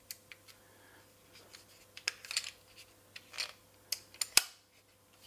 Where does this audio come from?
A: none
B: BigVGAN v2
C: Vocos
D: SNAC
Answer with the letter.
A